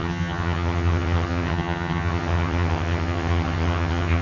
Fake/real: fake